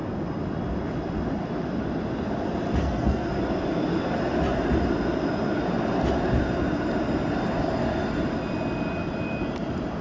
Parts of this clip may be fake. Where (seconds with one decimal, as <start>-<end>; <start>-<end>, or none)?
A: 2.8-3.3